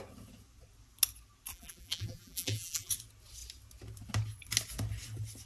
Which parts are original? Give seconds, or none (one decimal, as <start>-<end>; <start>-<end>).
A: 0.0-1.5; 2.9-5.5